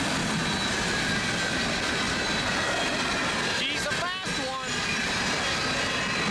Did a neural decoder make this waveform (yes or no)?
no